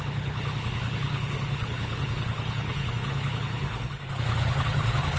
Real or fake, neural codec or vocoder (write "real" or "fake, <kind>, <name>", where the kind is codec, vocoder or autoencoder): fake, codec, HILCodec